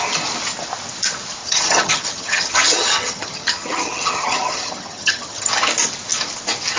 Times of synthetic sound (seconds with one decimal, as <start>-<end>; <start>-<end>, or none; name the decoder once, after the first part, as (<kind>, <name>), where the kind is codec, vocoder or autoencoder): 1.4-5.5 (vocoder, HiFi-GAN)